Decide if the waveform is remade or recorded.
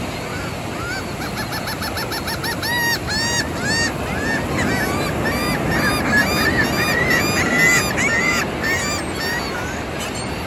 recorded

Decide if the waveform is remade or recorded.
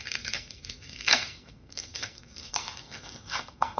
remade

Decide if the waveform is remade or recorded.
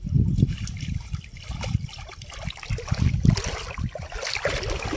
recorded